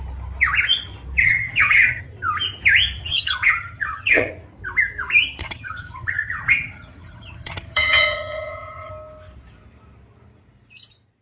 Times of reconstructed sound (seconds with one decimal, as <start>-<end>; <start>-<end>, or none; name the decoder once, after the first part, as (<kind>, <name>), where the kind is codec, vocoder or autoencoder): 1.2-2.0 (vocoder, HiFi-GAN); 3.1-4.3; 5.4-8.9